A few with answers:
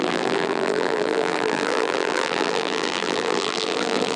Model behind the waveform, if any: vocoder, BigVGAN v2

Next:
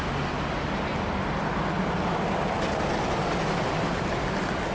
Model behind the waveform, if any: none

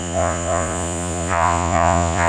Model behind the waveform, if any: vocoder, Vocos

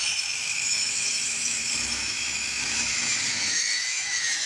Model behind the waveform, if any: autoencoder, DAC-VAE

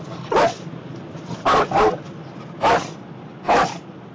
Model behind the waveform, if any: none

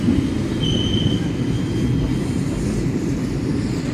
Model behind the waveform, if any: none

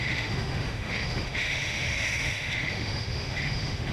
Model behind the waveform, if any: autoencoder, DAC-VAE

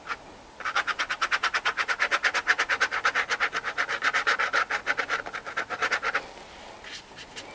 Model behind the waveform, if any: none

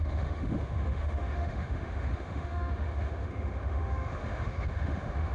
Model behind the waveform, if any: autoencoder, DAC-VAE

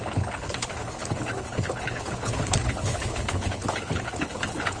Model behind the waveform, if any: codec, HILCodec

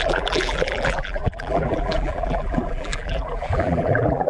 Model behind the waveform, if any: vocoder, BigVGAN v2